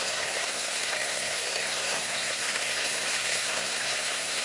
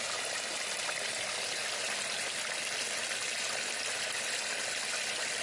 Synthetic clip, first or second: first